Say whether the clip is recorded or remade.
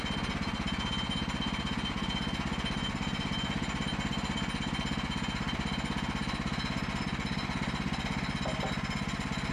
recorded